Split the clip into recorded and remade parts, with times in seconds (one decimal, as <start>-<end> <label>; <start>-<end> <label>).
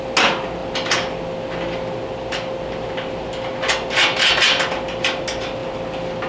0.0-6.3 recorded